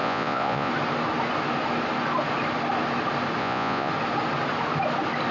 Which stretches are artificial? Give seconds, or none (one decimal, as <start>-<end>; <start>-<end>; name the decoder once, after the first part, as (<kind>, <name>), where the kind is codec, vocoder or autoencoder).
0.0-0.7 (vocoder, Vocos); 3.4-3.9